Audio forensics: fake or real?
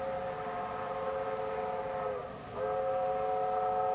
real